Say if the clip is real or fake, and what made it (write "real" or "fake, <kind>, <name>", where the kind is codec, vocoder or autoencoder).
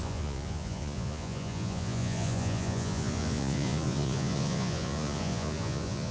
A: fake, vocoder, Vocos